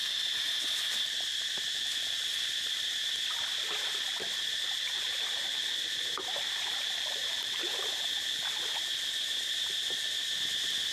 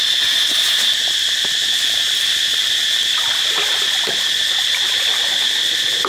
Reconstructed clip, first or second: first